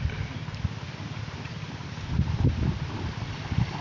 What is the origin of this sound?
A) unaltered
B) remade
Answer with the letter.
A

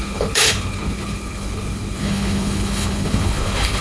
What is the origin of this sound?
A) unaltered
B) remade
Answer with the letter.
B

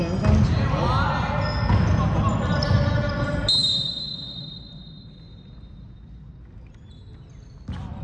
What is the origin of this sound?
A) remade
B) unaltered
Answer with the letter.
B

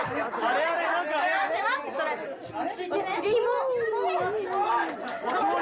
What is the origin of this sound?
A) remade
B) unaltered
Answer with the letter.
B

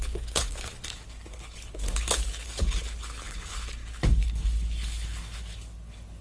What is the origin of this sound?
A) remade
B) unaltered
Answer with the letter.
A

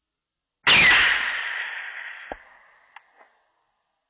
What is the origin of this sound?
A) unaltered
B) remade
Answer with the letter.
A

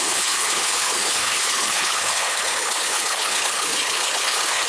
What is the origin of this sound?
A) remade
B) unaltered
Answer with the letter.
A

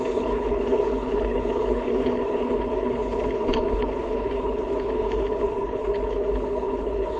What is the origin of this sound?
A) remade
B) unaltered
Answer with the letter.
A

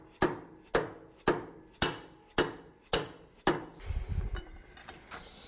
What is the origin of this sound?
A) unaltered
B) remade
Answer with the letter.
A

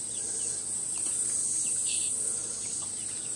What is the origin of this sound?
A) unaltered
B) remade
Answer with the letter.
A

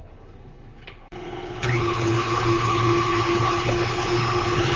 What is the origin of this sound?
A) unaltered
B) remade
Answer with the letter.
B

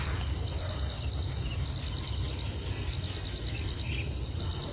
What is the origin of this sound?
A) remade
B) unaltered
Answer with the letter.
B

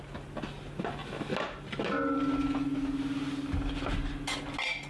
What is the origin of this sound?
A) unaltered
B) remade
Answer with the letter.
A